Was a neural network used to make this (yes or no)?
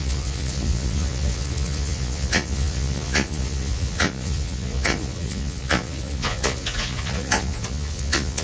yes